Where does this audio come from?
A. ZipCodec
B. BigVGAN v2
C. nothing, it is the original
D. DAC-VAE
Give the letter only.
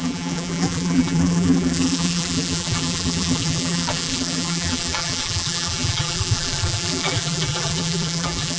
B